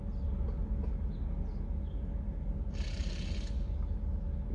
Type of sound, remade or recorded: recorded